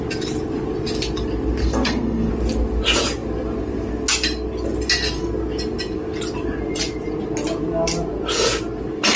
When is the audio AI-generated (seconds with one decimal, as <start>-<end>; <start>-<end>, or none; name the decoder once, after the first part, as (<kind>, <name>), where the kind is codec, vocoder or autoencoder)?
1.6-2.3 (codec, SNAC)